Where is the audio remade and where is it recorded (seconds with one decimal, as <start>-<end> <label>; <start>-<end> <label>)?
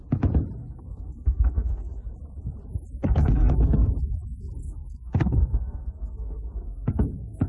0.0-0.6 recorded; 0.6-2.1 remade; 2.1-3.0 recorded; 3.0-3.9 remade; 3.9-4.6 recorded; 4.6-7.5 remade